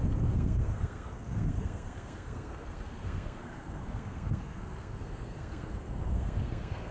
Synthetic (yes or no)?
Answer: yes